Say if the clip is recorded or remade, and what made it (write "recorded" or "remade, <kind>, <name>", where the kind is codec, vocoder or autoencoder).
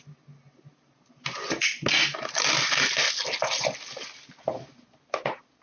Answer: recorded